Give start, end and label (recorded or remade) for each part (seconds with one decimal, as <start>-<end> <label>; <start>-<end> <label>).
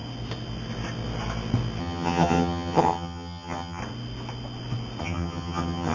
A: 0.0-1.8 recorded; 1.8-3.8 remade; 3.8-5.0 recorded; 5.0-5.9 remade